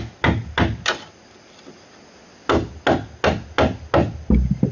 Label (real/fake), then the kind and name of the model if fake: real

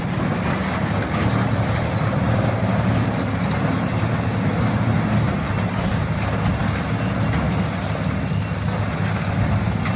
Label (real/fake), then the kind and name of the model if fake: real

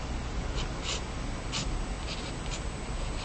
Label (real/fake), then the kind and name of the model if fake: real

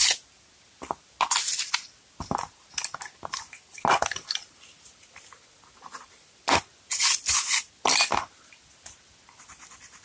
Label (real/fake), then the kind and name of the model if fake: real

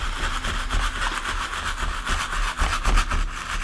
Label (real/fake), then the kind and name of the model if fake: real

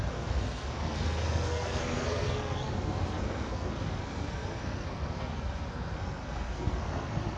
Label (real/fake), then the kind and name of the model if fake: fake, codec, SNAC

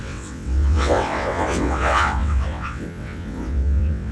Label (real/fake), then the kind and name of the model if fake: fake, vocoder, WaveNeXt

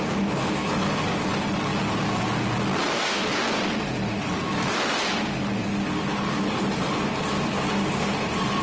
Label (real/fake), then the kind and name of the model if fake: real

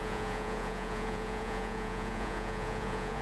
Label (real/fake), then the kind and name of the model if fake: fake, vocoder, Vocos